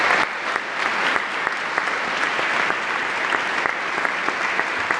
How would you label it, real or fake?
real